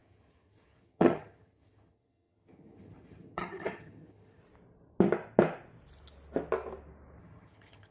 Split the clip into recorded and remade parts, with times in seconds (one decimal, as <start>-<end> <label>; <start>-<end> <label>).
0.0-4.4 remade; 4.4-7.2 recorded; 7.2-7.9 remade